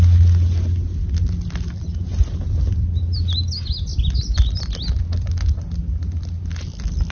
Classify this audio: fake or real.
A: real